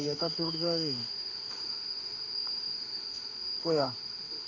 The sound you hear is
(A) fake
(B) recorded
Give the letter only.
A